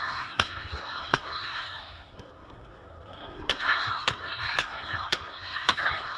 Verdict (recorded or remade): remade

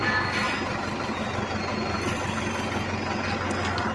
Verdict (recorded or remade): recorded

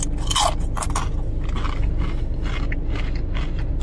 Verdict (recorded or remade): recorded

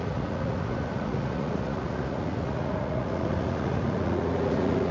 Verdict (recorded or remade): remade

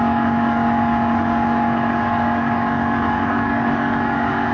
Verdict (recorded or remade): remade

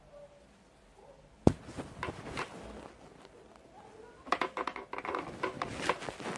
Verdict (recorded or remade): recorded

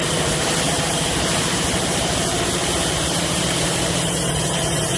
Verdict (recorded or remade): remade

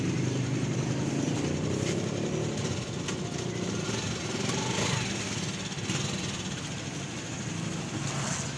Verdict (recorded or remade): recorded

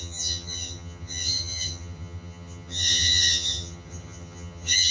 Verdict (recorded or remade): remade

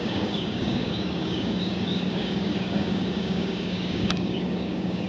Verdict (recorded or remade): remade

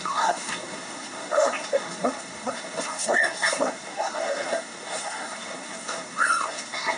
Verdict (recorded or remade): remade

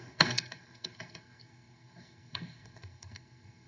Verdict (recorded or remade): remade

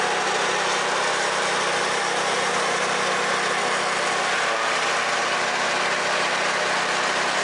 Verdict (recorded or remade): remade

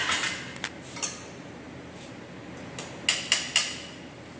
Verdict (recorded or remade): recorded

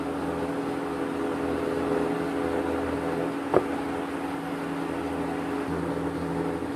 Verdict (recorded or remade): recorded